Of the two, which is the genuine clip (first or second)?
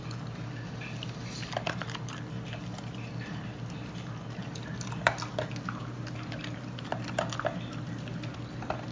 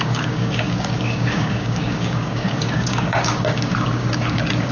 first